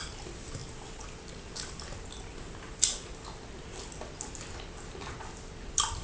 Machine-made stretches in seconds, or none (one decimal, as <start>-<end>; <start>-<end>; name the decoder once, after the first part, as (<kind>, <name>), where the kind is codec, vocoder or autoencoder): none